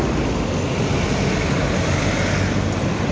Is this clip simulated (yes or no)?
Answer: no